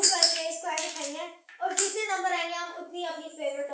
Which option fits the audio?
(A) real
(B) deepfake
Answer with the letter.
B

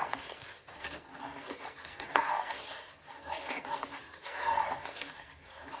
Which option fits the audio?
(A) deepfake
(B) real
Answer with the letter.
A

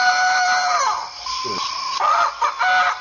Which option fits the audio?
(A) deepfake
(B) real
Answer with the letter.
B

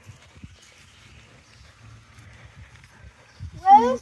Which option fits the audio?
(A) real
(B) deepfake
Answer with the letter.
A